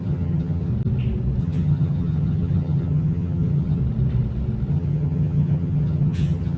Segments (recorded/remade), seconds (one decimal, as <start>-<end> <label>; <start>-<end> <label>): 0.0-0.7 remade; 0.7-1.4 recorded; 1.4-3.8 remade; 3.8-4.7 recorded; 4.7-6.6 remade